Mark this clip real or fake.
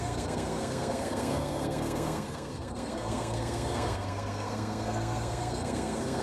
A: fake